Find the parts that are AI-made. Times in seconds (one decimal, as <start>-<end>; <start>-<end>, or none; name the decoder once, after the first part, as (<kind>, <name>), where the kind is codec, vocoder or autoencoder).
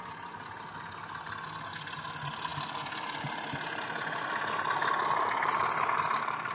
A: none